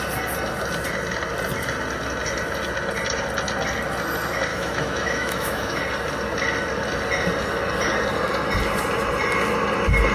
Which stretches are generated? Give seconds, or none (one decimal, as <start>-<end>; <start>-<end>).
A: 4.5-5.8